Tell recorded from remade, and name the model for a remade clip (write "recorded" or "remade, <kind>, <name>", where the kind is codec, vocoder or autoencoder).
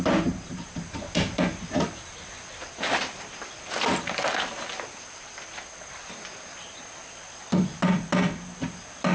recorded